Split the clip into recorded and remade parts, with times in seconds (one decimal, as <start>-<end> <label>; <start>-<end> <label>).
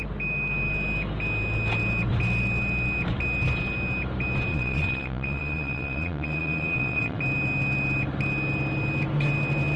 0.0-4.5 recorded; 4.5-7.2 remade; 7.2-9.8 recorded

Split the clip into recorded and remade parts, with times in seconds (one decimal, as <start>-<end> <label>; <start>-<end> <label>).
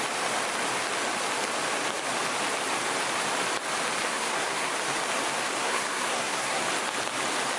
0.0-4.1 recorded; 4.1-4.7 remade; 4.7-5.6 recorded; 5.6-6.6 remade; 6.6-7.6 recorded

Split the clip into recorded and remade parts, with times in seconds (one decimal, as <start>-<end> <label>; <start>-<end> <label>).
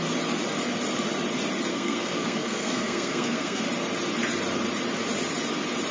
0.0-1.7 recorded; 1.7-3.6 remade; 3.6-5.9 recorded